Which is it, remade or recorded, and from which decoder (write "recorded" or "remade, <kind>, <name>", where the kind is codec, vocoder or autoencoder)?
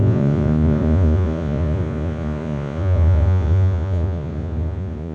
remade, vocoder, Vocos